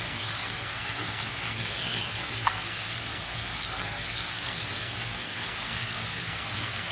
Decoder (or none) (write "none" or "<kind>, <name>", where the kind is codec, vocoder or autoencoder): codec, SNAC